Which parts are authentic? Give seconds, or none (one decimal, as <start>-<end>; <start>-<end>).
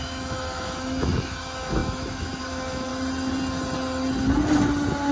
2.9-5.1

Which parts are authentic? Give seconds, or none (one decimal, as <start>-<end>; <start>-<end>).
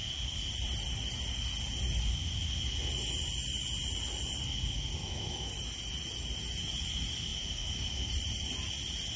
0.0-5.0; 5.5-9.2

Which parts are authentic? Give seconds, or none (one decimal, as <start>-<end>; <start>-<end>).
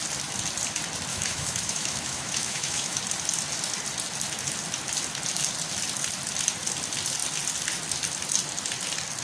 0.0-1.1; 3.0-9.2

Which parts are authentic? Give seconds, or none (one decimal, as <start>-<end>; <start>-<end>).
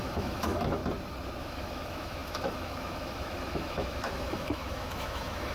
0.8-1.4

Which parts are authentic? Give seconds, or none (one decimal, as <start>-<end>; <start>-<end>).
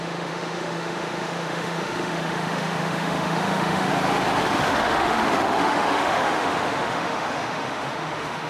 3.9-4.4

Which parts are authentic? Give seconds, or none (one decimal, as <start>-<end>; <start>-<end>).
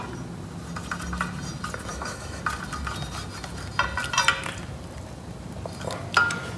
0.0-1.9; 2.4-6.6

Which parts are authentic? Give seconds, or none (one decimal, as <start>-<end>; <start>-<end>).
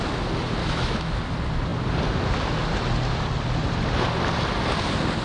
0.0-0.6; 1.2-5.2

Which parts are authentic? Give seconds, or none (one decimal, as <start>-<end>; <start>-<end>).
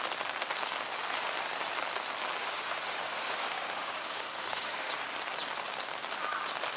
0.0-2.4; 4.9-6.8